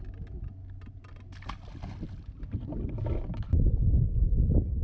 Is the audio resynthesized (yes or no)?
no